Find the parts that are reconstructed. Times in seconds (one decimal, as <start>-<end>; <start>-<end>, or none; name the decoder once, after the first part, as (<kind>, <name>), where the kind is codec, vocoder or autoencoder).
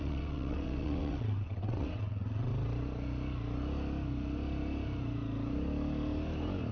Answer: 0.0-2.5 (vocoder, WaveNeXt)